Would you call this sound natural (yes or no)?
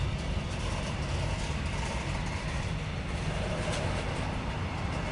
yes